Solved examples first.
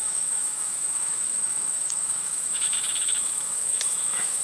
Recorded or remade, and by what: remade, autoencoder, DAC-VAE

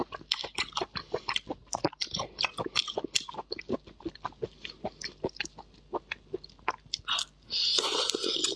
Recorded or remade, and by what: recorded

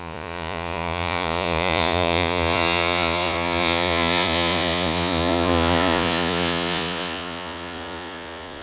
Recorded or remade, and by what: remade, vocoder, Vocos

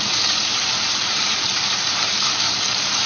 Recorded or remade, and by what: remade, vocoder, BigVGAN v2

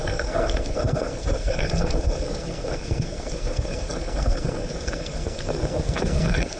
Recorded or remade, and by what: remade, codec, SNAC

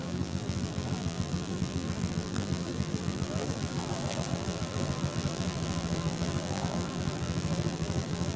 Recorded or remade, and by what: remade, vocoder, BigVGAN v2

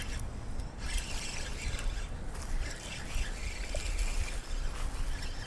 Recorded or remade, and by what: recorded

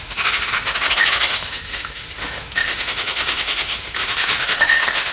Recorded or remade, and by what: remade, autoencoder, DAC-VAE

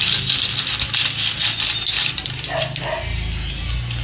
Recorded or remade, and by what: recorded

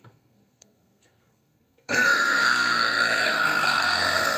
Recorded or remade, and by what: remade, codec, SNAC